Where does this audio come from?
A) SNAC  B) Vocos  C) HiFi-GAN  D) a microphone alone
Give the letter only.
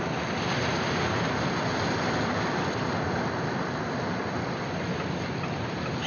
D